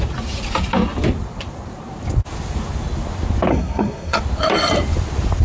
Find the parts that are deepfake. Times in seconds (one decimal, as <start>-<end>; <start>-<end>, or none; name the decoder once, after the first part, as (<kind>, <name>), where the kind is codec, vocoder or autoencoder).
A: 3.5-4.2 (codec, SNAC)

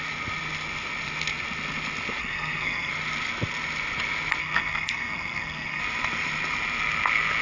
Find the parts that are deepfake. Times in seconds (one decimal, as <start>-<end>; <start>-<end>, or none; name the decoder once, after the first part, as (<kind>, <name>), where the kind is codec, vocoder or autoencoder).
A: 2.2-2.9 (codec, SNAC); 4.4-5.8

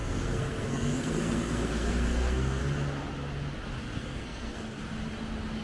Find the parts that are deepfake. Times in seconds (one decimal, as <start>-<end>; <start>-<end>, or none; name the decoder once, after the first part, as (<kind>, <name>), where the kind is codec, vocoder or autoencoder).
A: 0.0-2.6 (codec, SNAC); 3.8-4.8

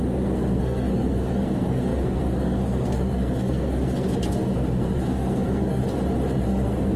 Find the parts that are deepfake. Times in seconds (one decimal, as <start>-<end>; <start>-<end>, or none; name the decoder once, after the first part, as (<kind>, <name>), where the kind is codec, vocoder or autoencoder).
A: 0.0-5.8 (codec, SNAC); 6.4-7.0

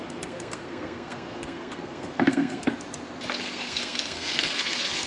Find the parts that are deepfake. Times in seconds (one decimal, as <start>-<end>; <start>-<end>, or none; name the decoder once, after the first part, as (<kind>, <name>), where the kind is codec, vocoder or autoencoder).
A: 0.0-2.7 (codec, SNAC); 3.4-5.1

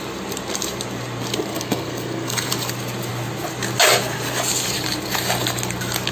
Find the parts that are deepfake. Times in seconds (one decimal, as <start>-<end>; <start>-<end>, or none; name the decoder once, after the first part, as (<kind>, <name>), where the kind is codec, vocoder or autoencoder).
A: 1.5-2.5 (codec, SNAC)